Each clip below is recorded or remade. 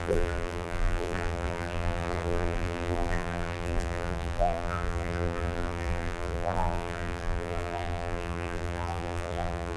remade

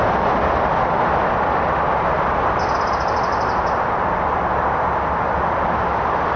recorded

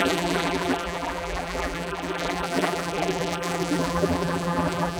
remade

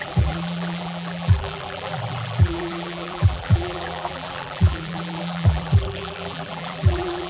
remade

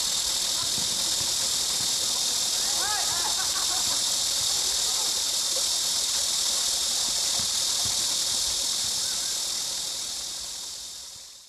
recorded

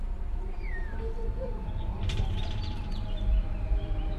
remade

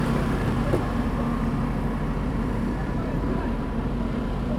remade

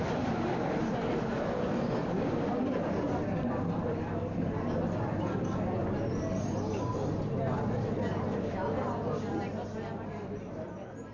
remade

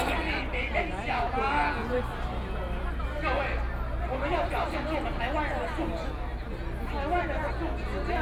recorded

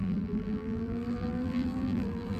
remade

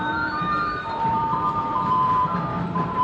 remade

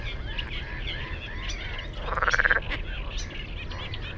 recorded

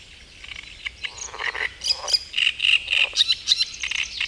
remade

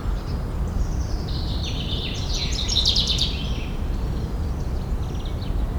remade